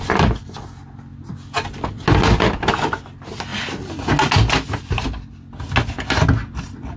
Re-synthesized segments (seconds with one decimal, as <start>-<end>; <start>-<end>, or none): none